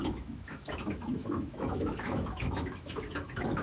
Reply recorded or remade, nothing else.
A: remade